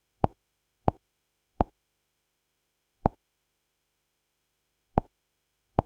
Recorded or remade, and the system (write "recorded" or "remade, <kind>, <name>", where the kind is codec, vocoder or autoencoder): remade, autoencoder, DAC-VAE